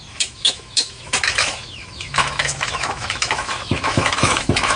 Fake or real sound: fake